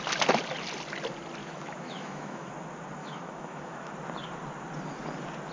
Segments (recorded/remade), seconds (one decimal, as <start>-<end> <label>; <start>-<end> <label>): 0.0-1.4 recorded; 1.4-2.5 remade; 2.5-3.0 recorded; 3.0-3.9 remade; 3.9-5.5 recorded